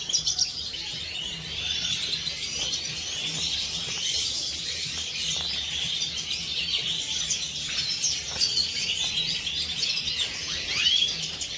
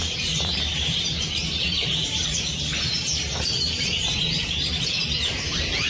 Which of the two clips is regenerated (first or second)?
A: second